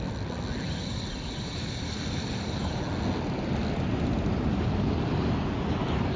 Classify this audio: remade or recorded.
recorded